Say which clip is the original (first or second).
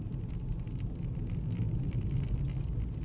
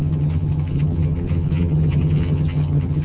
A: first